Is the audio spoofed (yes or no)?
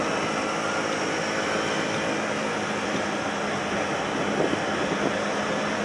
no